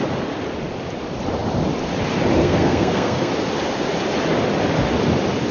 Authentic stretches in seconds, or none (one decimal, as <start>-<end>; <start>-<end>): 0.0-2.4; 3.3-5.5